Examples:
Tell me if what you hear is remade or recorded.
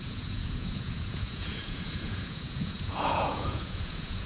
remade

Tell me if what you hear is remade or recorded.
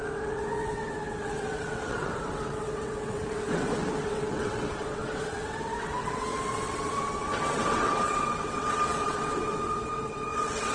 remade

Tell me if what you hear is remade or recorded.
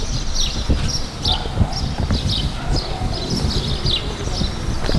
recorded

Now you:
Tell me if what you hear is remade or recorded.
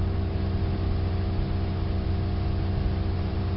recorded